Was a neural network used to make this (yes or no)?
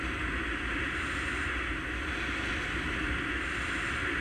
no